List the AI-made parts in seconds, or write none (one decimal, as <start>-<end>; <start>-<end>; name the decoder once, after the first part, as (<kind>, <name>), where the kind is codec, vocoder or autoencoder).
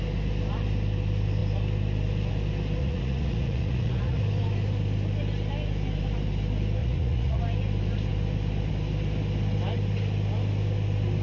2.8-4.2 (vocoder, Vocos); 6.8-7.4